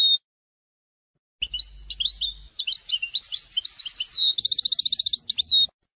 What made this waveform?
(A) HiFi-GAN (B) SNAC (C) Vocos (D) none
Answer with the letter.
D